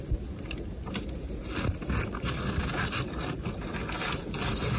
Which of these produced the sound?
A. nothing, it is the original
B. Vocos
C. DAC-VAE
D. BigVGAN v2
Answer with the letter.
A